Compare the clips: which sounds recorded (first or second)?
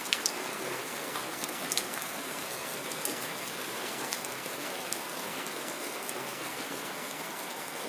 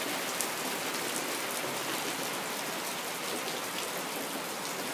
second